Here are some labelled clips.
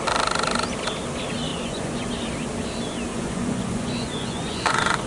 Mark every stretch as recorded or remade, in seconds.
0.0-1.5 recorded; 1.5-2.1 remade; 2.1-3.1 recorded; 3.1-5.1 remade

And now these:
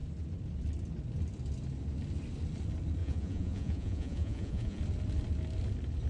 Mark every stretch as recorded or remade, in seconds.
0.0-3.0 recorded; 3.0-4.8 remade; 4.8-6.1 recorded

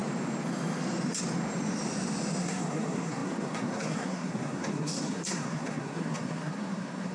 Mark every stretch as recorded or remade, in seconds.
0.0-2.4 recorded; 2.4-7.1 remade

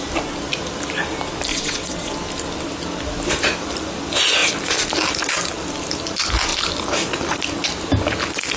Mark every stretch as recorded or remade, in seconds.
0.0-1.5 recorded; 1.5-2.1 remade; 2.1-8.6 recorded

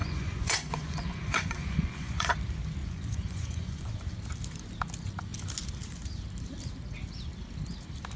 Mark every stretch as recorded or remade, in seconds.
0.0-2.3 remade; 2.3-2.8 recorded; 2.8-3.9 remade; 3.9-8.2 recorded